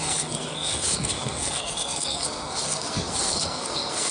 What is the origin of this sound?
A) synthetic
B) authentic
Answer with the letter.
A